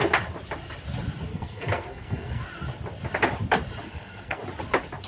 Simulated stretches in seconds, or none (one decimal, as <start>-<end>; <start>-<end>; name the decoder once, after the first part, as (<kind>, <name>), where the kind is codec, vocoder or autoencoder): 1.3-2.4 (codec, SNAC); 3.8-4.4